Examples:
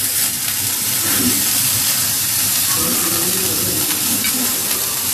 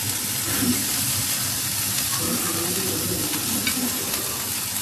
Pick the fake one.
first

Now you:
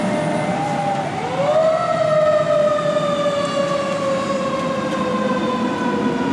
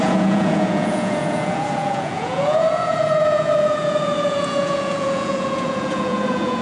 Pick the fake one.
second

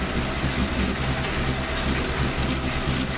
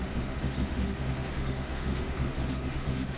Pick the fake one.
second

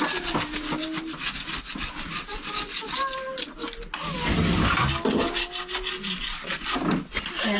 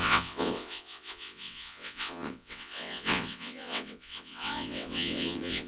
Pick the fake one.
second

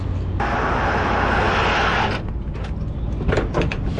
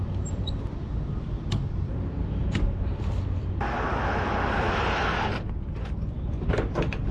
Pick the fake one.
second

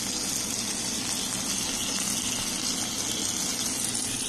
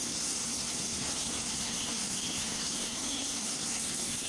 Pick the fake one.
second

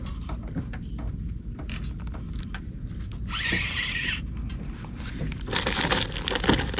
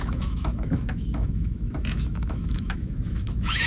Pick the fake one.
second